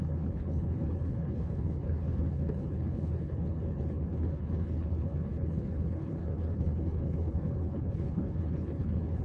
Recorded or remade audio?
remade